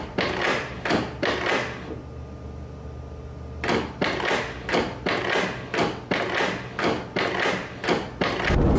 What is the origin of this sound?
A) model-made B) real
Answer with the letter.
B